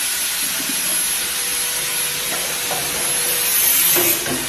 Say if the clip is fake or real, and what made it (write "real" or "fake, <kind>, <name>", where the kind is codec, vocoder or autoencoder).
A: real